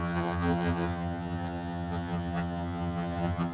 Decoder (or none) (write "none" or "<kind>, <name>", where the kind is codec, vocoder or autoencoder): vocoder, HiFi-GAN